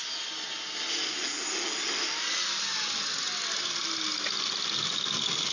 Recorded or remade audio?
recorded